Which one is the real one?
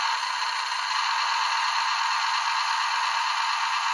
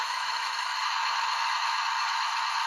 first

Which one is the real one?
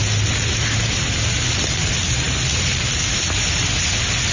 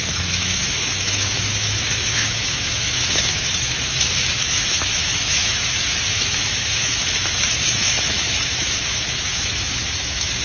first